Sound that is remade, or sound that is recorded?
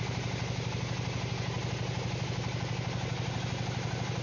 recorded